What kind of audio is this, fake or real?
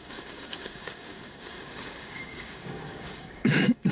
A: fake